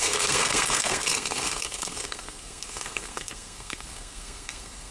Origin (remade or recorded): remade